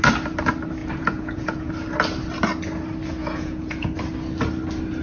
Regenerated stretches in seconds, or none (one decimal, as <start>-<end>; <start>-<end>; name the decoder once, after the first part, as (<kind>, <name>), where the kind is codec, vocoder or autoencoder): 0.8-1.7 (vocoder, Vocos); 3.2-3.9